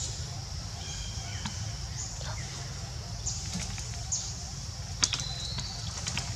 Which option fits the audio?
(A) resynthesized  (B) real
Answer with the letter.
B